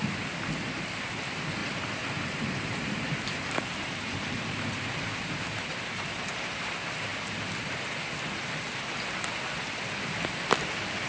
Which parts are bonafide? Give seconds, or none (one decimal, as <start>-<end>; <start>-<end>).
0.0-1.6; 6.6-11.1